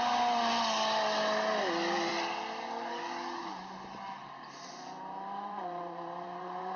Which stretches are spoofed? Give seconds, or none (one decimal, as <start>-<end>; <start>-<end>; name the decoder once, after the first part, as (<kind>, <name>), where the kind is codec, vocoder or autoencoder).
4.2-6.8 (vocoder, BigVGAN v2)